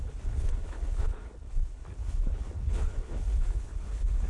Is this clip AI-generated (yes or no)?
yes